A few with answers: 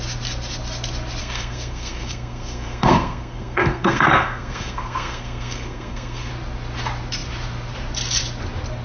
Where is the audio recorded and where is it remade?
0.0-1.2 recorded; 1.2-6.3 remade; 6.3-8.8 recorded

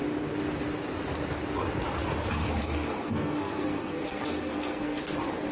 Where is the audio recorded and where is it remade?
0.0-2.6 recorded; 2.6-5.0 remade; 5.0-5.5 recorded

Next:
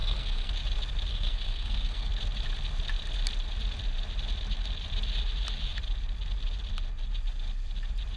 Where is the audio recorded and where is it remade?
0.0-0.5 remade; 0.5-1.1 recorded; 1.1-2.1 remade; 2.1-8.2 recorded